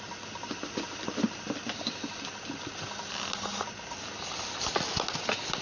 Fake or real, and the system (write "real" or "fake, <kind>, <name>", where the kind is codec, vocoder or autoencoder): real